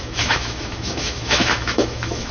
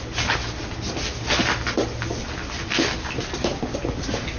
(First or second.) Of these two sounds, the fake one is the first